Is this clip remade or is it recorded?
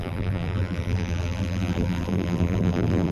remade